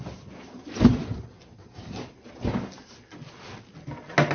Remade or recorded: recorded